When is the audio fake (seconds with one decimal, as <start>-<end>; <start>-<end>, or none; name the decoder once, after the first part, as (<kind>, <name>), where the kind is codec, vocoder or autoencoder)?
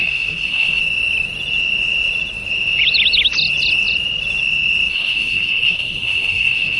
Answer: 0.0-0.8 (codec, SNAC); 4.9-6.8